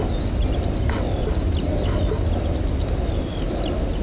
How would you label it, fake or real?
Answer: real